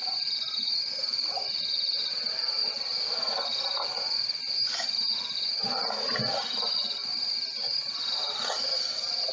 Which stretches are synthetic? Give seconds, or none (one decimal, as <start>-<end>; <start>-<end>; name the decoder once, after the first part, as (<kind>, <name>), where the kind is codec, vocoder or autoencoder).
none